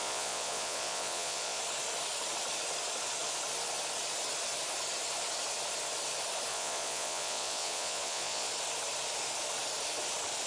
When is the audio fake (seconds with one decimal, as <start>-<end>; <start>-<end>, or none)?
0.0-1.6; 6.5-8.5

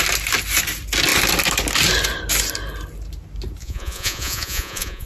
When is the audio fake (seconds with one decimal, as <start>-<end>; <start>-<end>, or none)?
3.6-5.1

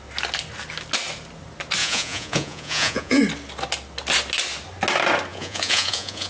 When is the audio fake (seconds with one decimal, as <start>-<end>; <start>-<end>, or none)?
1.8-3.2; 5.3-6.3